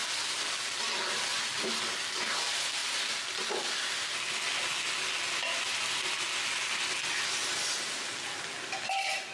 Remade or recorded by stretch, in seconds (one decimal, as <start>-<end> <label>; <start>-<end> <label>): 0.0-9.3 recorded